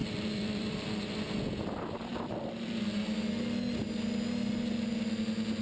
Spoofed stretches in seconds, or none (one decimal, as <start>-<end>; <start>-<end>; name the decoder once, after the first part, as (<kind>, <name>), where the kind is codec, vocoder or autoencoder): 0.0-1.2 (vocoder, BigVGAN v2); 2.1-3.0